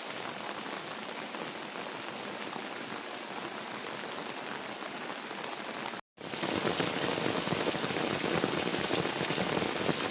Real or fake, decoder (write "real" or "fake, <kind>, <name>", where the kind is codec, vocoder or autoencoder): real